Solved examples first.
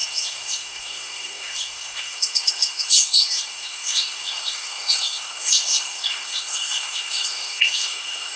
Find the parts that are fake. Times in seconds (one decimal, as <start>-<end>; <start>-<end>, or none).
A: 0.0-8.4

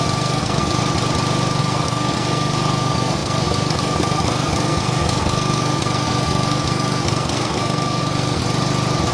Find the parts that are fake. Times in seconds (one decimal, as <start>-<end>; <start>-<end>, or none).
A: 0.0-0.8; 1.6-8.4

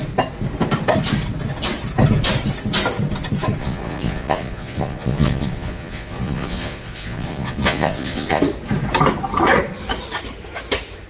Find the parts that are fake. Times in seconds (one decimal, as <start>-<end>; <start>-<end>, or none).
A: 3.6-8.4

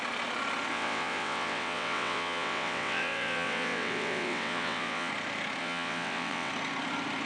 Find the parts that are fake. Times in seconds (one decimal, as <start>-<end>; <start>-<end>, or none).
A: 0.7-5.1; 5.6-6.5